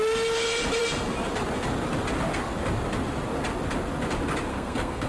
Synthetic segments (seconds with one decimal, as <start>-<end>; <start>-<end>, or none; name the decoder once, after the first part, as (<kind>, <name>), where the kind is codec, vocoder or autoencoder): 4.5-5.1 (codec, SNAC)